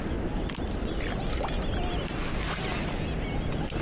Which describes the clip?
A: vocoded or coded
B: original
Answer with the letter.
B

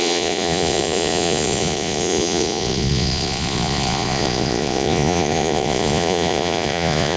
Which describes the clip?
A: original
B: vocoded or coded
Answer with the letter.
B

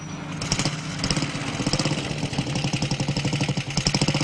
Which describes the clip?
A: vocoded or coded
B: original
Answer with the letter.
B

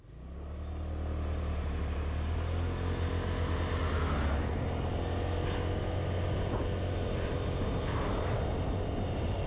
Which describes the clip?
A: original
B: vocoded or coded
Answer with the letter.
A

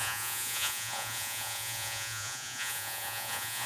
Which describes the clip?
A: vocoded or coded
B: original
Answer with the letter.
A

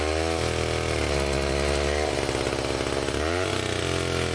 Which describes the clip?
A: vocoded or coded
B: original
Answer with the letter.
B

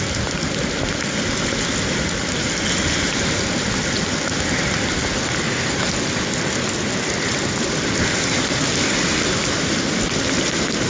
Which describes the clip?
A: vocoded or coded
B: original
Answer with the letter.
B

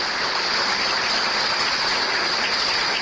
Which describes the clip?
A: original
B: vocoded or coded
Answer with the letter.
A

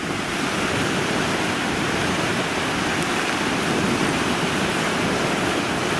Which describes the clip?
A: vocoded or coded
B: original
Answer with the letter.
B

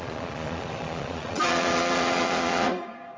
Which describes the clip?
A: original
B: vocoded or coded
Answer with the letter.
B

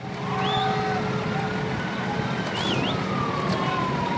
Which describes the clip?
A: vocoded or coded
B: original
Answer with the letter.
B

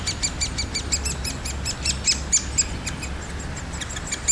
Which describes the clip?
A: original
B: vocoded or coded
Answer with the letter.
A